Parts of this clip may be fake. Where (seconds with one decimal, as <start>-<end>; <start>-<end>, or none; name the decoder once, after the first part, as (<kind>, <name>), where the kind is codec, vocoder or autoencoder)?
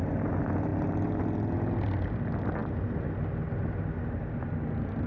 none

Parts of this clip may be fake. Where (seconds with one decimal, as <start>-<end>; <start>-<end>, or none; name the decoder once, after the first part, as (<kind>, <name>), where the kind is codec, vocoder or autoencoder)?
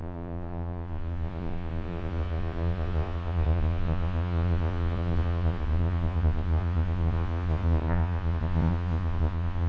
0.0-9.7 (vocoder, Vocos)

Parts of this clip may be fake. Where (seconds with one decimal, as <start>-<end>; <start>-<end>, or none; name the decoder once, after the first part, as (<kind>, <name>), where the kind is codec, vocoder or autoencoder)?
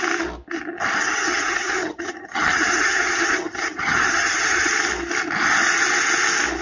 1.0-4.7 (vocoder, HiFi-GAN)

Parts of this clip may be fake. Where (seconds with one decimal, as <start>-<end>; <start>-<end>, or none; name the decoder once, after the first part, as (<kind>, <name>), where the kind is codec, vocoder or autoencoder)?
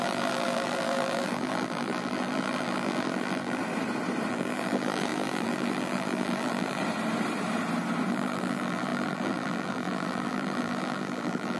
0.0-3.6 (vocoder, BigVGAN v2); 4.3-6.8; 8.1-11.6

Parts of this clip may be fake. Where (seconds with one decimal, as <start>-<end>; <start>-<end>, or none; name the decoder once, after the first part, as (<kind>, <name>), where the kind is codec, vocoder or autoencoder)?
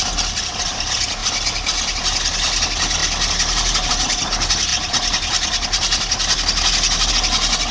3.0-3.9 (vocoder, BigVGAN v2)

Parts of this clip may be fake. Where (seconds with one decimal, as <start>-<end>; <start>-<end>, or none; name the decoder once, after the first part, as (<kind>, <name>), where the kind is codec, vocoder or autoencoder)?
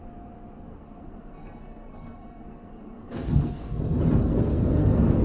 0.7-3.8 (codec, SNAC); 4.3-5.2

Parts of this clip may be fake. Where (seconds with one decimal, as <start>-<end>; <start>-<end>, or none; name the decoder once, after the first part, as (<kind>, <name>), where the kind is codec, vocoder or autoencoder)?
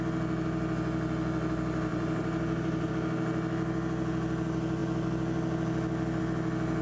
1.9-2.9 (vocoder, BigVGAN v2)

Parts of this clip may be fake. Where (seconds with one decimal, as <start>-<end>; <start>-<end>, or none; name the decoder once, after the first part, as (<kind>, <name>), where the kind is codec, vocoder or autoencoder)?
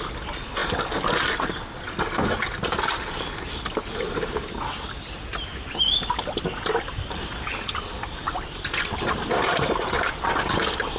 none